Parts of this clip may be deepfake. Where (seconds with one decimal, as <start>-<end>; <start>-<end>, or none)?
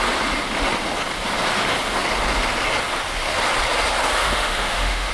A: 4.2-5.1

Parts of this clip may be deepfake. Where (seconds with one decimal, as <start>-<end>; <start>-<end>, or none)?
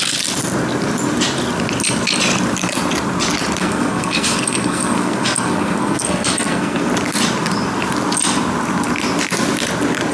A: 3.6-6.9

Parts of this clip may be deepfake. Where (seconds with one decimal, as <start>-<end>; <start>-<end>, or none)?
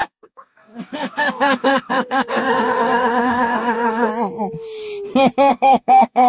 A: 0.0-4.1; 5.5-6.3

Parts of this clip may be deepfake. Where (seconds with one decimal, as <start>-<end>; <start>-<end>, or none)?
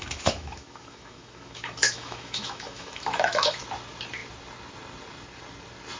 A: 0.0-3.6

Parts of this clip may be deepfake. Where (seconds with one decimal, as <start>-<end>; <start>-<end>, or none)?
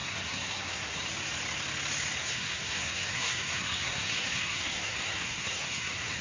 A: 0.0-1.0; 2.2-6.2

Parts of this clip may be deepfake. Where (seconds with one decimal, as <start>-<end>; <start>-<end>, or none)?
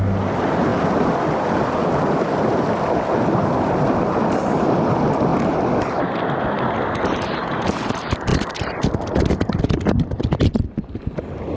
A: 0.7-2.7; 5.3-6.2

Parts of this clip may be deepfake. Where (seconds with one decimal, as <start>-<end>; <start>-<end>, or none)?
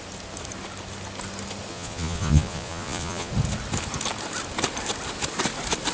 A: 1.7-3.3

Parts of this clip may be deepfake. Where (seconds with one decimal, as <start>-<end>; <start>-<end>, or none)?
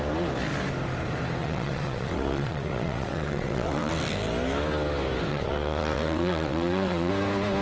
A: 1.4-3.9; 5.3-7.1